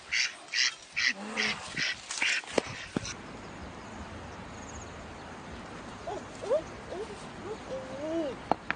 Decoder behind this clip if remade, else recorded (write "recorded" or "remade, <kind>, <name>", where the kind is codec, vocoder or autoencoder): recorded